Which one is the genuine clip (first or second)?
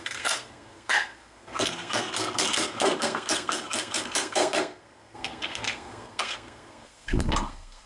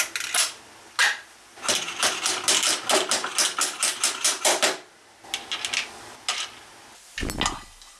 second